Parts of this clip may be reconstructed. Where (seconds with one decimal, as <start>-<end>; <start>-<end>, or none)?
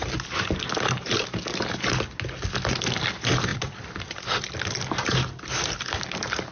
3.5-6.0